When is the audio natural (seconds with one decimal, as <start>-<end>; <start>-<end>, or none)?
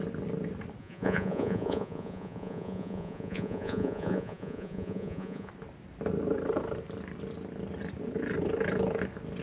0.0-0.8; 5.5-9.4